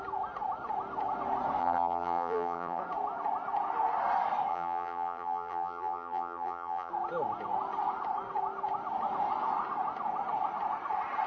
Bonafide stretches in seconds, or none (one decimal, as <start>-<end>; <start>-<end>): 0.0-1.6; 2.8-4.5; 6.9-11.3